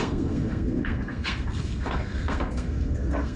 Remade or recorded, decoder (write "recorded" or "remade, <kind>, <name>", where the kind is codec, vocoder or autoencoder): remade, codec, SNAC